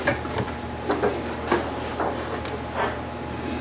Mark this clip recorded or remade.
recorded